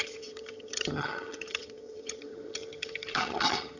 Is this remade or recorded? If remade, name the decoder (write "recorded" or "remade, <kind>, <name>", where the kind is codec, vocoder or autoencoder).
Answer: remade, vocoder, HiFi-GAN